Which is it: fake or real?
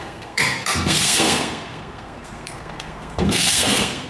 fake